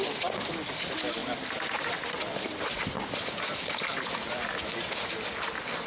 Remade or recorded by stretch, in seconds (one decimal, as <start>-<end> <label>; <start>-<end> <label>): 0.0-5.9 recorded